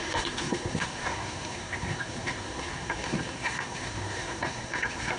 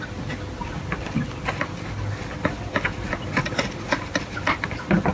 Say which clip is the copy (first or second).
first